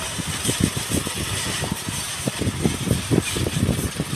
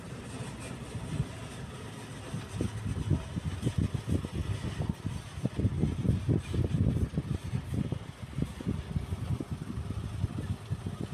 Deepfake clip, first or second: first